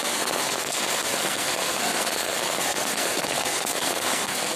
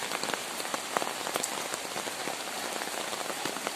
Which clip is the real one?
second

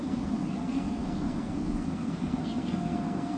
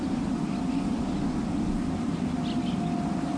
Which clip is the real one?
second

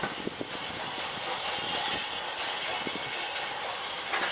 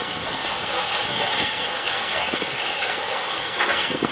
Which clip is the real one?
first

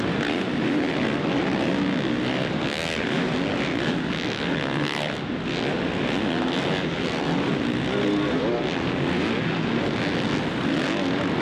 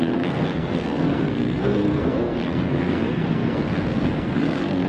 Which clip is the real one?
first